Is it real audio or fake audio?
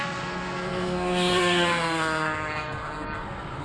fake